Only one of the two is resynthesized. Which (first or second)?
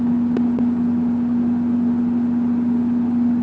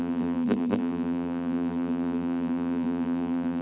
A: second